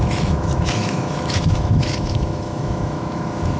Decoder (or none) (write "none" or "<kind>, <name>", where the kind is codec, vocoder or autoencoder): autoencoder, DAC-VAE